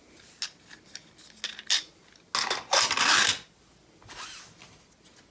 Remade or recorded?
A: recorded